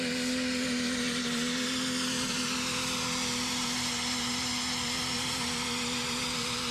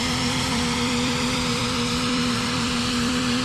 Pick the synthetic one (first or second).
second